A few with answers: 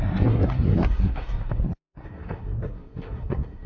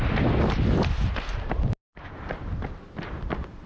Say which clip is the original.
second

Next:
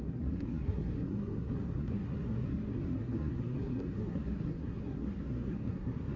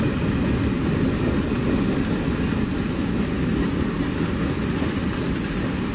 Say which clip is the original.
second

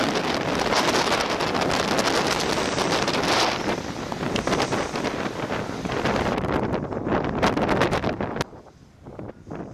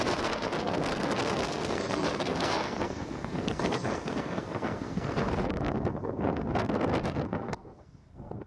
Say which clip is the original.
first